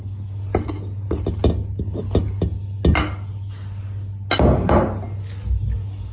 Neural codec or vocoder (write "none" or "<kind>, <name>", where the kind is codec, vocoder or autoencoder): none